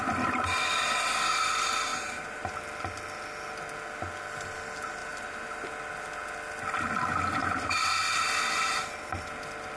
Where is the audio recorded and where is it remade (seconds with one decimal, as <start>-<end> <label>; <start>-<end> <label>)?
0.0-1.9 recorded; 1.9-2.5 remade; 2.5-5.0 recorded; 5.0-5.7 remade; 5.7-7.4 recorded; 7.4-8.0 remade; 8.0-9.8 recorded

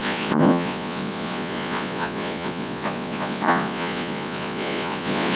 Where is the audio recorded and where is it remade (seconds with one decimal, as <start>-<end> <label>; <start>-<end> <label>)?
0.0-5.4 remade

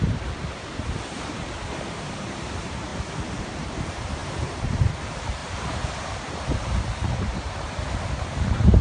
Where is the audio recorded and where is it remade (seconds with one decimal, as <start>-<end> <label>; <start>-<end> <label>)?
0.0-2.9 remade; 2.9-3.4 recorded; 3.4-8.8 remade